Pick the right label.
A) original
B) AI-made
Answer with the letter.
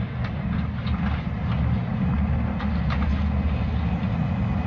A